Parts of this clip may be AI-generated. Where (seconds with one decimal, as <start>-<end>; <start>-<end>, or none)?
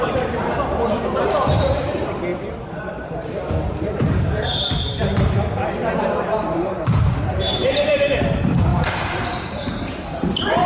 0.0-5.8; 6.4-10.7